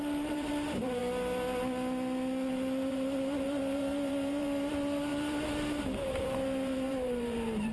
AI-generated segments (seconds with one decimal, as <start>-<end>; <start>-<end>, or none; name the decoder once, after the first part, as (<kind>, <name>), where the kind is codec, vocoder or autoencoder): 0.0-1.0 (vocoder, BigVGAN v2); 2.5-7.7